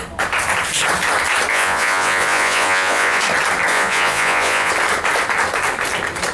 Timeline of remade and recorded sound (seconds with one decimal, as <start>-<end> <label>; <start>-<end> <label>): 0.0-1.5 recorded; 1.5-3.2 remade; 3.2-3.7 recorded; 3.7-4.7 remade; 4.7-6.3 recorded